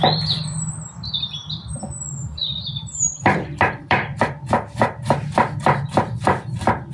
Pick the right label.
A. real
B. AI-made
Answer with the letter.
B